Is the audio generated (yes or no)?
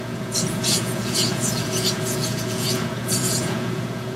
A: yes